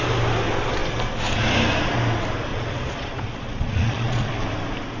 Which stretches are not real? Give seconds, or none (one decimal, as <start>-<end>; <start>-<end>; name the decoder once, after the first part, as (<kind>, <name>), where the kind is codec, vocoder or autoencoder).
2.5-4.3 (vocoder, Vocos)